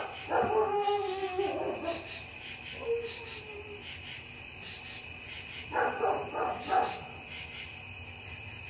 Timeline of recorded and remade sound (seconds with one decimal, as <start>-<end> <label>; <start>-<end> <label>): 0.0-0.6 recorded; 0.6-1.4 remade; 1.4-8.7 recorded